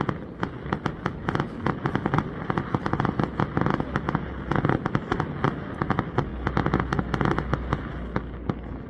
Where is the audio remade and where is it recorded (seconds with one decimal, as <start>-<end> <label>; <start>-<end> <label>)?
0.0-8.9 recorded